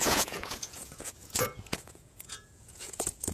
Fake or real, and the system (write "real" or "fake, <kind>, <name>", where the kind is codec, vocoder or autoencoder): fake, vocoder, Vocos